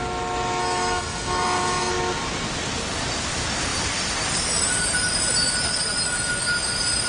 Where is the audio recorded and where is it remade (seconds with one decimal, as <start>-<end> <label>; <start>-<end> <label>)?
0.0-0.6 recorded; 0.6-1.9 remade; 1.9-7.1 recorded